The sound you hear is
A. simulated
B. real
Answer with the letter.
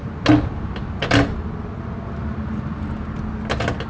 B